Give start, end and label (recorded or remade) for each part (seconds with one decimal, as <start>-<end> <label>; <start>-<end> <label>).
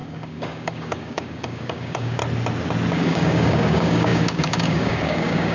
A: 0.0-2.2 remade; 2.2-2.9 recorded; 2.9-5.5 remade